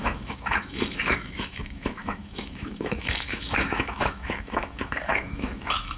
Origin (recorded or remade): remade